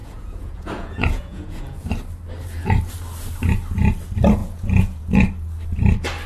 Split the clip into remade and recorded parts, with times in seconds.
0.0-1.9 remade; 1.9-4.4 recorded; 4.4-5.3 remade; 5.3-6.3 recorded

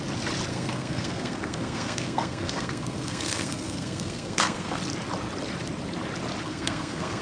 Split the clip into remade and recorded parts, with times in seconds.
0.0-0.5 recorded; 0.5-4.8 remade; 4.8-6.4 recorded; 6.4-7.2 remade